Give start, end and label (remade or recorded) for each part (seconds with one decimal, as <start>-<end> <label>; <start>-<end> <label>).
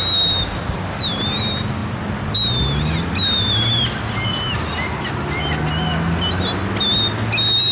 0.0-7.7 recorded